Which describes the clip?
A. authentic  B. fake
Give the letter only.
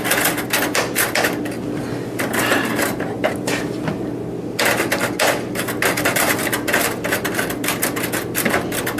A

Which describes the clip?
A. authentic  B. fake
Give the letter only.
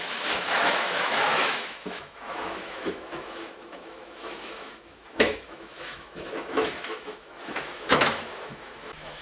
B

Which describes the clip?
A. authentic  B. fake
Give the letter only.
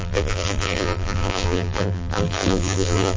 B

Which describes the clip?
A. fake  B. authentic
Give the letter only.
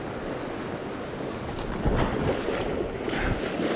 B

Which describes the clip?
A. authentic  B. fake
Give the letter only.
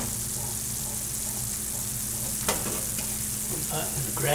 A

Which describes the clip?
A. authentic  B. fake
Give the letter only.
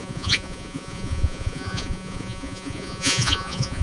B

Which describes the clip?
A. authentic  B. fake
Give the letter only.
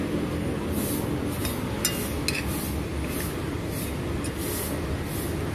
A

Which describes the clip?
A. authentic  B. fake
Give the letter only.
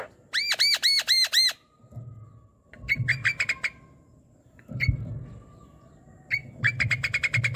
A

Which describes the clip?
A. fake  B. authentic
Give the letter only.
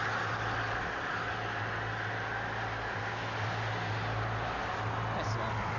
B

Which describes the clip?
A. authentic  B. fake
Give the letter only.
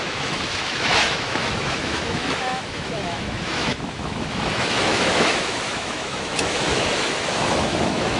B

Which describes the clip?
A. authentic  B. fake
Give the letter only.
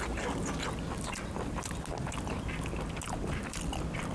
A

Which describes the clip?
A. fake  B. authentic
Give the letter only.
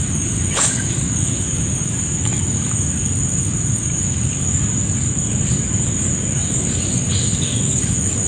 A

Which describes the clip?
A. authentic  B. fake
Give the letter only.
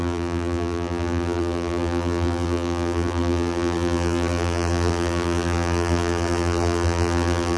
B